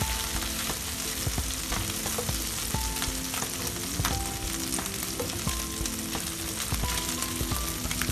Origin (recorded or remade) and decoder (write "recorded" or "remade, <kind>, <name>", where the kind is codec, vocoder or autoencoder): recorded